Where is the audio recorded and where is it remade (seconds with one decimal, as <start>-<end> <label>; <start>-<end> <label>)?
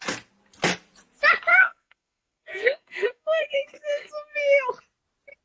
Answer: 0.0-1.5 recorded; 1.5-4.7 remade; 4.7-5.4 recorded